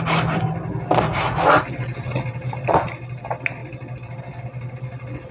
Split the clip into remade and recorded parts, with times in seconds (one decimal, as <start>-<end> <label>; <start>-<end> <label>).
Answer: 0.0-3.6 recorded; 3.6-4.2 remade; 4.2-5.3 recorded